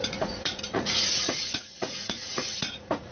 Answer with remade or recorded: remade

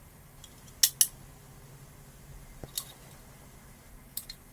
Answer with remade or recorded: recorded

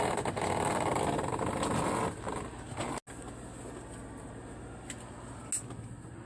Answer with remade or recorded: recorded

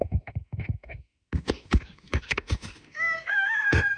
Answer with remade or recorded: remade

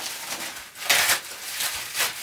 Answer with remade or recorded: recorded